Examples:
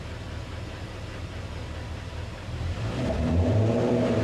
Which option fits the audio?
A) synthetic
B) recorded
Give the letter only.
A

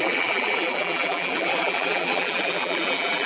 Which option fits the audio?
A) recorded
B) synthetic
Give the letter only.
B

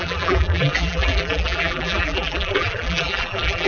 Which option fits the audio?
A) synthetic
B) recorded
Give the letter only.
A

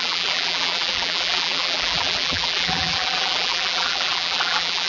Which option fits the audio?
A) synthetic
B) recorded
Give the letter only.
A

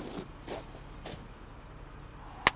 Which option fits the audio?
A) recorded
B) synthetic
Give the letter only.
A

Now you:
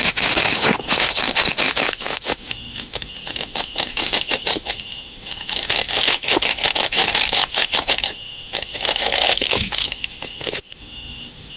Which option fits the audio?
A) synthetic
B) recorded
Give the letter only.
A